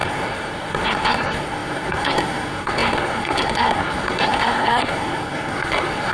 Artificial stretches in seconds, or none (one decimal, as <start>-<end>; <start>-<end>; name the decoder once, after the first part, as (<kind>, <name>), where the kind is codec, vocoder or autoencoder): 0.0-6.1 (codec, SNAC)